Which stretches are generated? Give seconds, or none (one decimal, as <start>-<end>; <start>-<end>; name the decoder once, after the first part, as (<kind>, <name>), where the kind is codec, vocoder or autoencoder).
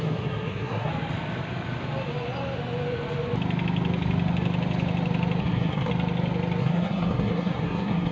0.0-0.9 (codec, SNAC); 5.4-5.9; 6.6-8.1